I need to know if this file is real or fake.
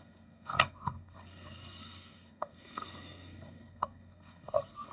fake